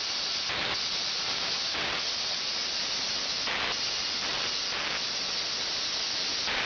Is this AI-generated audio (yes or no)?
no